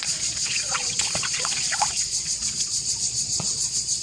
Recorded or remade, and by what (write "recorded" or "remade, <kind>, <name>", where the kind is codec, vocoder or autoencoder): remade, vocoder, Vocos